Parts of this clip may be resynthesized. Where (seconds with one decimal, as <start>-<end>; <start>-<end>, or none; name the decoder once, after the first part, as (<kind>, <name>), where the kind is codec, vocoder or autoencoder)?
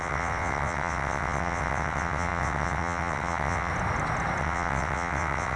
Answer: 0.0-3.7 (vocoder, WaveNeXt); 4.4-5.6